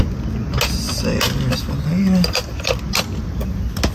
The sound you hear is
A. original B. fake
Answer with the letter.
A